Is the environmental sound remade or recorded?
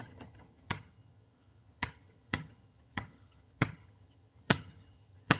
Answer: remade